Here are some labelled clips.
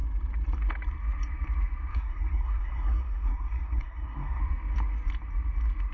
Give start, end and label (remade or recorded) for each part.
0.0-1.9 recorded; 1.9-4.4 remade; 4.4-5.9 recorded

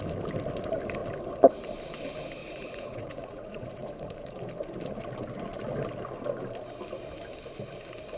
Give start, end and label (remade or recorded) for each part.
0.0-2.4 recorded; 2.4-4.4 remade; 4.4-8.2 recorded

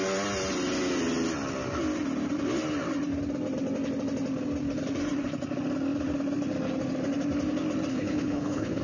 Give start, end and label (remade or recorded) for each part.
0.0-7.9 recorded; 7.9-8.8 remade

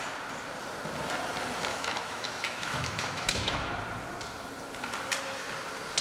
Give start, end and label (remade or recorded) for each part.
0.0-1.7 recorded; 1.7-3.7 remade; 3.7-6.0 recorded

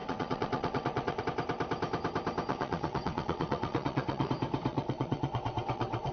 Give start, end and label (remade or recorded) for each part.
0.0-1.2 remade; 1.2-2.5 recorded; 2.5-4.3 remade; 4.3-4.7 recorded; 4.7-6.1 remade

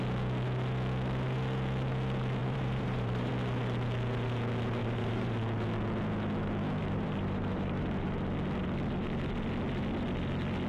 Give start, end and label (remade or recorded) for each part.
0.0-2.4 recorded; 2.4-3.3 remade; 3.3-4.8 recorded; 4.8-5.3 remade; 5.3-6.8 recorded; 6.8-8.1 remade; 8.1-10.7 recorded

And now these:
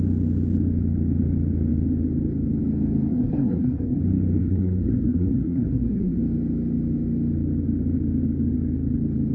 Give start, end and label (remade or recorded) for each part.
0.0-3.1 recorded; 3.1-4.0 remade; 4.0-4.4 recorded; 4.4-6.2 remade; 6.2-9.3 recorded

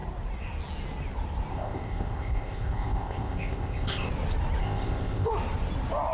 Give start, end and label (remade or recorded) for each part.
0.0-1.5 recorded; 1.5-4.1 remade; 4.1-4.6 recorded; 4.6-5.3 remade; 5.3-6.1 recorded